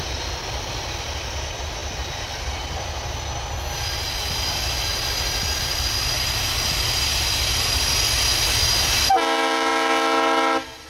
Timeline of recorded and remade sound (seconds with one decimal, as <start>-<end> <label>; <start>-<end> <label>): 0.0-10.9 recorded